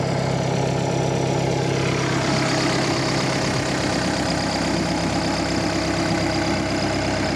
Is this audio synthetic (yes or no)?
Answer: no